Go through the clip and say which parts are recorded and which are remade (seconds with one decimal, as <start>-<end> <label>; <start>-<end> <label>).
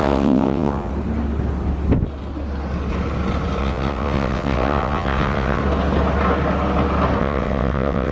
0.0-0.9 remade; 0.9-3.6 recorded; 3.6-5.6 remade; 5.6-7.2 recorded; 7.2-8.1 remade